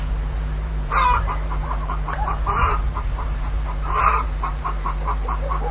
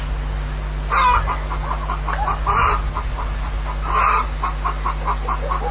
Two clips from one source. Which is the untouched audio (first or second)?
second